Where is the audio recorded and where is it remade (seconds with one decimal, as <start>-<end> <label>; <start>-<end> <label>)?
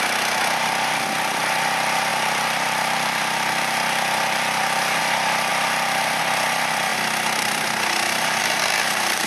0.0-2.1 recorded; 2.1-5.0 remade; 5.0-5.5 recorded; 5.5-6.2 remade; 6.2-9.3 recorded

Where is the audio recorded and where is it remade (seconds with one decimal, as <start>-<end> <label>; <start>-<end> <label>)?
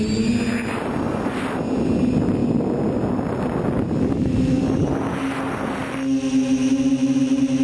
0.0-7.6 recorded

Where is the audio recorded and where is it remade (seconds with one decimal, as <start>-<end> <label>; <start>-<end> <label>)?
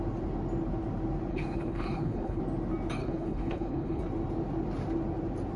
0.0-1.3 recorded; 1.3-2.4 remade; 2.4-3.0 recorded; 3.0-4.0 remade; 4.0-5.6 recorded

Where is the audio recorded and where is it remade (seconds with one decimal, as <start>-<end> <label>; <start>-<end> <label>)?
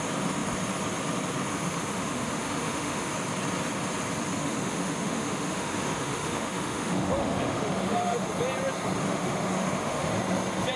0.0-1.5 recorded; 1.5-3.1 remade; 3.1-4.4 recorded; 4.4-8.3 remade; 8.3-9.0 recorded; 9.0-10.1 remade; 10.1-10.8 recorded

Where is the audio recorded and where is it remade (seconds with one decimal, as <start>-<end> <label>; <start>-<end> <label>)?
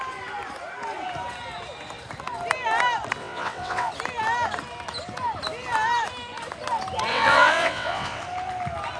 0.0-3.2 recorded; 3.2-3.9 remade; 3.9-7.1 recorded; 7.1-8.2 remade; 8.2-9.0 recorded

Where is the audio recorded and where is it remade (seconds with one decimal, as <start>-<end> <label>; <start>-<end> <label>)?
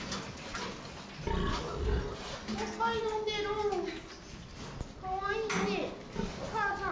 0.0-6.9 recorded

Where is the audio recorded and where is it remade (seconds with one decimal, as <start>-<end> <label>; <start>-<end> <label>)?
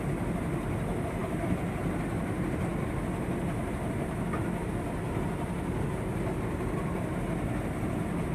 0.0-8.3 recorded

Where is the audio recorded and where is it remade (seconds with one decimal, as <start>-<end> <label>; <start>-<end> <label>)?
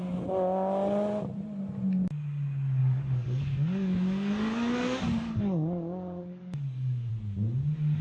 0.0-2.8 recorded; 2.8-7.1 remade; 7.1-8.0 recorded